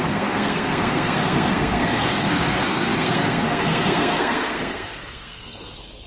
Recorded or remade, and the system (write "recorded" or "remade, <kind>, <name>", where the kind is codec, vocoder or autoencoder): remade, codec, SNAC